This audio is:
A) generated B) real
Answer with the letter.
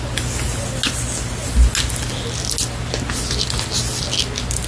B